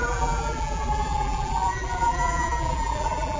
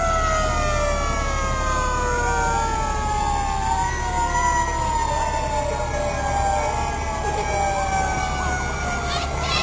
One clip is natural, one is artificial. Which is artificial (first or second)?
first